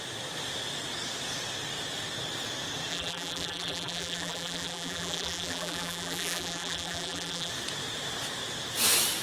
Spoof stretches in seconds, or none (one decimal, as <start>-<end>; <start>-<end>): 2.9-7.5